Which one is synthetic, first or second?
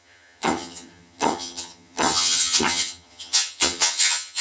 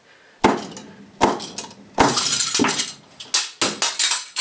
first